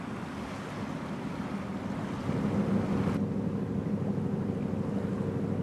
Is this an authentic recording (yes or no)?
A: yes